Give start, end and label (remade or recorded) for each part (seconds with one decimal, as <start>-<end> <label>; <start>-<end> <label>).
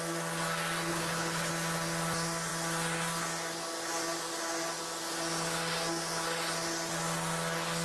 0.0-0.9 recorded; 0.9-1.5 remade; 1.5-7.8 recorded